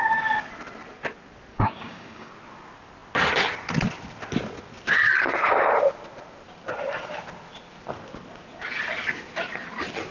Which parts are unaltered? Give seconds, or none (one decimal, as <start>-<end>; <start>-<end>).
0.0-1.5; 2.3-10.1